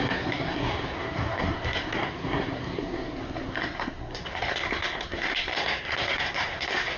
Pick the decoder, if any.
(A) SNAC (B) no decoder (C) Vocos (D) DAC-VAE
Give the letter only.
A